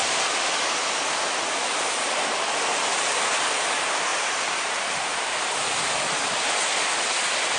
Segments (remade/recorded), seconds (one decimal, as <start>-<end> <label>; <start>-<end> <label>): 0.0-4.1 recorded; 4.1-5.5 remade; 5.5-7.6 recorded